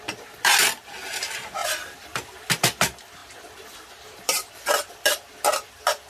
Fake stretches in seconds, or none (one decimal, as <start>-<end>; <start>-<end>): 1.6-2.5